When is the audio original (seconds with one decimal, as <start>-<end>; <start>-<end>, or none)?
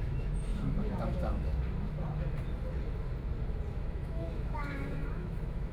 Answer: 1.5-3.7